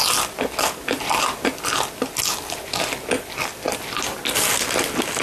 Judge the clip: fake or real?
real